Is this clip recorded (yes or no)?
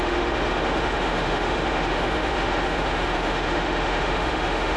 no